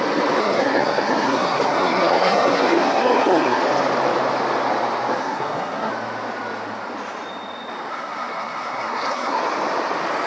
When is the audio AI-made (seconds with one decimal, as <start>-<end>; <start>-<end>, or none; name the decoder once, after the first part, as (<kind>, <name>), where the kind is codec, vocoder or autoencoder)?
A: 0.4-3.6 (codec, SNAC); 5.2-5.9; 7.9-9.4

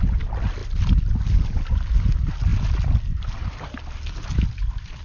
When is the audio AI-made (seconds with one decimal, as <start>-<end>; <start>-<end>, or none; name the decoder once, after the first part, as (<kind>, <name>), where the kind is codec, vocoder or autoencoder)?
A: none

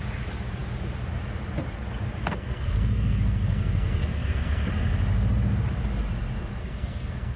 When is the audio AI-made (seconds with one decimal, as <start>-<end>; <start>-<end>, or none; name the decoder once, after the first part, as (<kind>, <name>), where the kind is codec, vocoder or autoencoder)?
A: 2.2-4.7 (codec, SNAC); 6.6-7.4

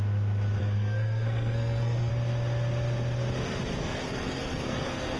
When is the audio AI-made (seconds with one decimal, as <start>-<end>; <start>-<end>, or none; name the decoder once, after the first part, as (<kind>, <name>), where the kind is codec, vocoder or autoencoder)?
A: 0.6-2.1 (codec, SNAC); 3.7-5.2